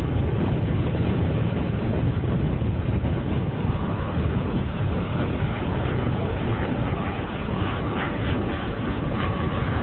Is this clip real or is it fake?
fake